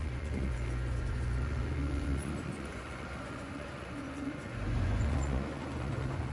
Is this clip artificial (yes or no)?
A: yes